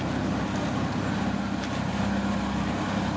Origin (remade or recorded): recorded